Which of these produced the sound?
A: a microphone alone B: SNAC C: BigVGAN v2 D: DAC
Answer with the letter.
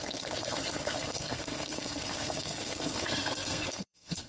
B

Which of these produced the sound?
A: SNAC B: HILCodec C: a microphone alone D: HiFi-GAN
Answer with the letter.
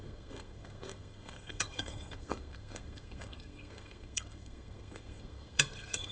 A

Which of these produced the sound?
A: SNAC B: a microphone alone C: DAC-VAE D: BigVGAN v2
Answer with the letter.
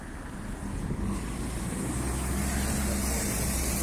B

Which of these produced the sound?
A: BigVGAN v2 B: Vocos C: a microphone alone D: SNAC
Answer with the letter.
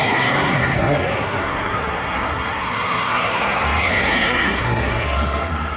D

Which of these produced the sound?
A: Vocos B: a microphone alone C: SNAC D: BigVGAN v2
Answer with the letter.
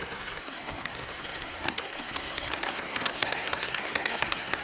C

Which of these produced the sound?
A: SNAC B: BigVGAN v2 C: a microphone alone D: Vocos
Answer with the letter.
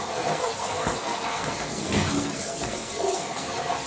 A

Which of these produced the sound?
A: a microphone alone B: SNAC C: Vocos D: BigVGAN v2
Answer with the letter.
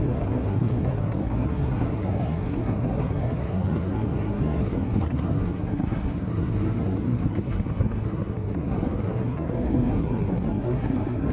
B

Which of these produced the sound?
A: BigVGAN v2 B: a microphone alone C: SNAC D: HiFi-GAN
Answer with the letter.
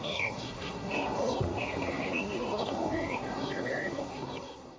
C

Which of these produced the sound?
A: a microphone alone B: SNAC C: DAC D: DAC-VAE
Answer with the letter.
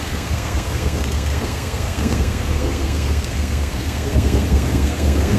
B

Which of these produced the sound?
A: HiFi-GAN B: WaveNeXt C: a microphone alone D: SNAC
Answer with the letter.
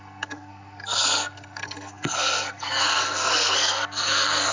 D